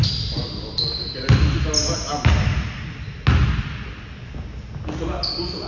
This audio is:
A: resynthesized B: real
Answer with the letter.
B